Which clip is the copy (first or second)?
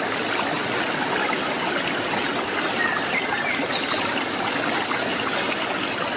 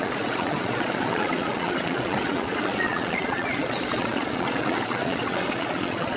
second